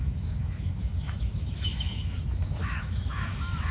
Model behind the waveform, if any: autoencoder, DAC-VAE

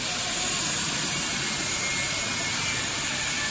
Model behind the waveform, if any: none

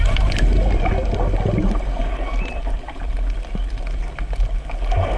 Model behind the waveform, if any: none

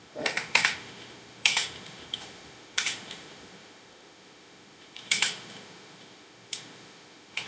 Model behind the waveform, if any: autoencoder, DAC-VAE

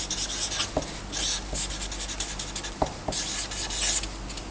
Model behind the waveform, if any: none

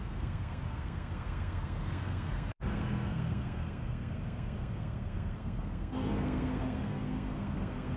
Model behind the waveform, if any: codec, SNAC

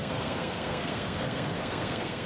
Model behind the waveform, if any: codec, SNAC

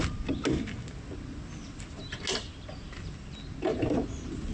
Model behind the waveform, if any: none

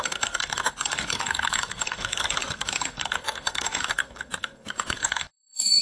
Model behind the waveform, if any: codec, SNAC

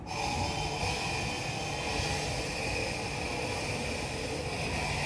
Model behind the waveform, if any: none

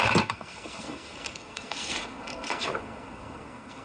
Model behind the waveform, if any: codec, SNAC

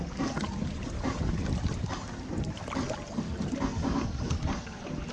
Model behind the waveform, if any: none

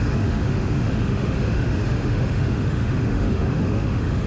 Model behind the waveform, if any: autoencoder, DAC-VAE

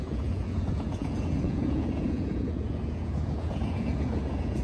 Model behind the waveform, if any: vocoder, Vocos